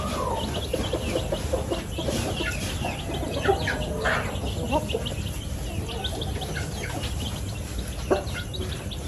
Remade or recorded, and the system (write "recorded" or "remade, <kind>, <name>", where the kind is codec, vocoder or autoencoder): recorded